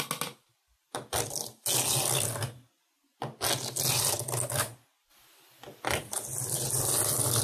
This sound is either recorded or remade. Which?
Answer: recorded